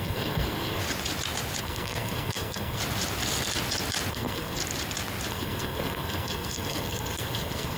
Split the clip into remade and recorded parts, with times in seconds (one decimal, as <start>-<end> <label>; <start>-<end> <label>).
0.0-0.8 remade; 0.8-1.6 recorded; 1.6-2.8 remade; 2.8-4.1 recorded; 4.1-4.6 remade; 4.6-5.3 recorded; 5.3-7.8 remade